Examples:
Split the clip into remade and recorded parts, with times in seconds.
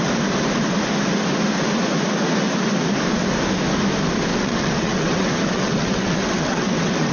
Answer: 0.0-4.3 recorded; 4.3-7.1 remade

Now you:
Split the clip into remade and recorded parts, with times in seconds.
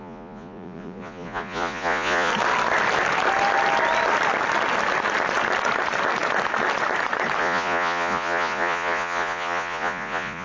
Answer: 0.0-2.3 remade; 2.3-7.4 recorded; 7.4-10.4 remade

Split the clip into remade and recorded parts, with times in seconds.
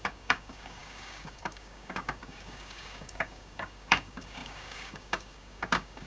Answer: 0.0-6.1 remade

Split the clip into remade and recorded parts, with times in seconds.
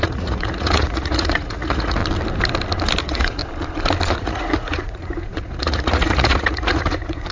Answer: 0.0-2.0 remade; 2.0-3.0 recorded; 3.0-3.4 remade; 3.4-4.1 recorded; 4.1-7.3 remade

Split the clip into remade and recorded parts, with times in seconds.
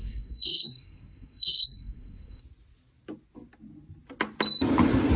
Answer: 0.0-2.4 remade; 2.4-5.2 recorded